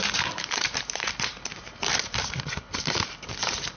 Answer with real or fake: fake